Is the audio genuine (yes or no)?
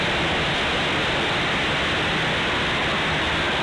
yes